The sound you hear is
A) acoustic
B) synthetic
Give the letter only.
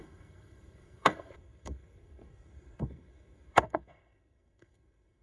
B